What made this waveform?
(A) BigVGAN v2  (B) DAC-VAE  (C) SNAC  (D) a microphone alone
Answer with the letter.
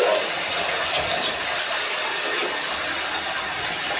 D